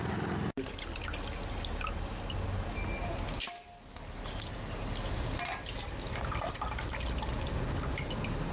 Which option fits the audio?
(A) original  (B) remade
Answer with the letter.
A